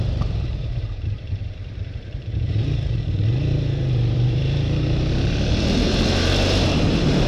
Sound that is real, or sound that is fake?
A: fake